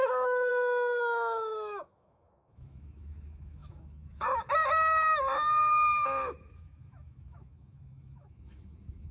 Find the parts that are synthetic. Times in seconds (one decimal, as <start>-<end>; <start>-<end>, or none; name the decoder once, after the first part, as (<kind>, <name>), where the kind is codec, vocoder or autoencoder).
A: 0.0-9.1 (autoencoder, DAC-VAE)